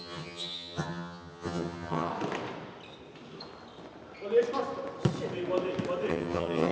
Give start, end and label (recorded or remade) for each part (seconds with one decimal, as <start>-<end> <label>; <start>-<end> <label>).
0.0-2.1 remade; 2.1-6.1 recorded; 6.1-6.7 remade